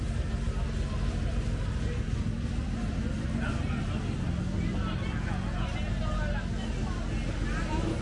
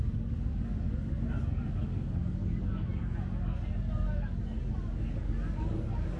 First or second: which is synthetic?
second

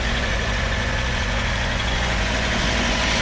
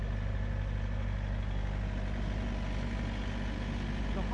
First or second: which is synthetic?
first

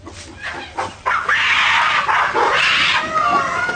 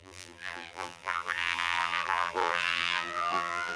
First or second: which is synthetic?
second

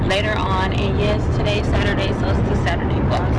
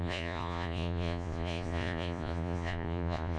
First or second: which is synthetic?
second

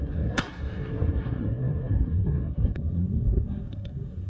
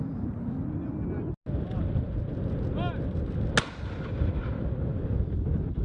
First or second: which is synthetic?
first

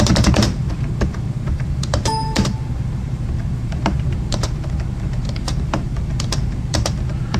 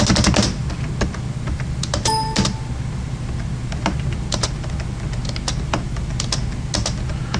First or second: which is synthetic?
first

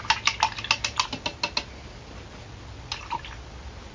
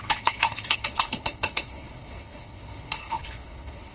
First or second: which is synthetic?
second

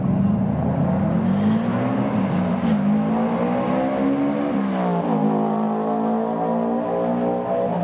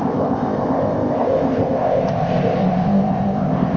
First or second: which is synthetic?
second